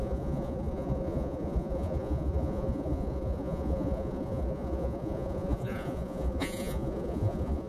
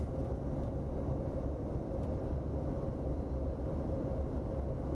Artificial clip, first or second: first